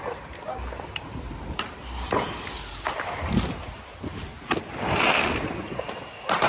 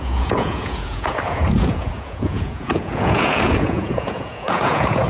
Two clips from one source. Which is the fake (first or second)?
second